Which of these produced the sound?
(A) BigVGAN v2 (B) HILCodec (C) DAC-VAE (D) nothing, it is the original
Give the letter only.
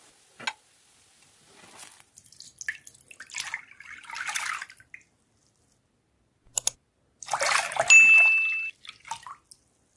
D